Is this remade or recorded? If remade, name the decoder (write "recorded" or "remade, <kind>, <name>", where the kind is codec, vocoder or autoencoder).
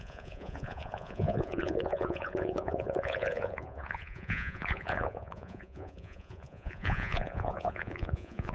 remade, vocoder, Vocos